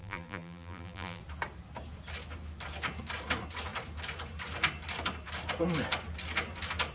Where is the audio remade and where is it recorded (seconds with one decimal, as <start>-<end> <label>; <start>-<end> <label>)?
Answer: 0.0-1.2 remade; 1.2-6.9 recorded